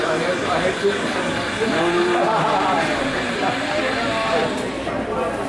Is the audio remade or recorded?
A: recorded